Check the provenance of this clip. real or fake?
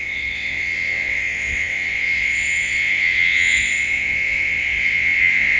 fake